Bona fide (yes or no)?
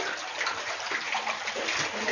yes